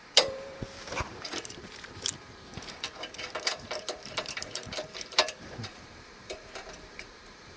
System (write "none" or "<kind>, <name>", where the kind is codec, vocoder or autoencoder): vocoder, BigVGAN v2